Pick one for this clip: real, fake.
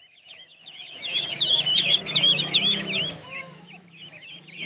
fake